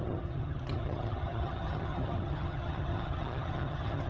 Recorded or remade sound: remade